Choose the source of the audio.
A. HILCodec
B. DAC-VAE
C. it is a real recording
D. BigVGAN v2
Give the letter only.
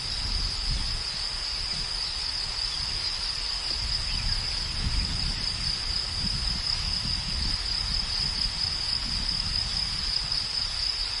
C